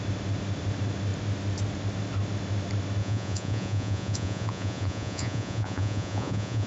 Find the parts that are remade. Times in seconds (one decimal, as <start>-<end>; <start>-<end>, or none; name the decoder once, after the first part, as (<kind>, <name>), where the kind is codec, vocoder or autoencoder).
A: 3.0-6.7 (vocoder, Vocos)